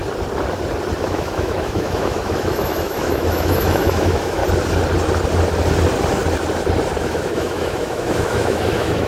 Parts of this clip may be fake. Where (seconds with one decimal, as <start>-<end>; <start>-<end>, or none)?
1.0-4.4; 7.0-9.1